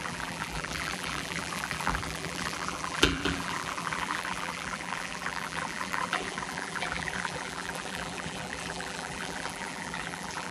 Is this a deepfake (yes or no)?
yes